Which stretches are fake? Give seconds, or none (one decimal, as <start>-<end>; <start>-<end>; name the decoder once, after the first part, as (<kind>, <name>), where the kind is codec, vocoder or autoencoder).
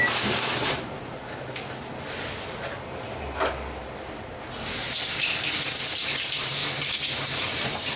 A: 0.0-1.2 (vocoder, BigVGAN v2); 5.5-6.6; 7.2-8.0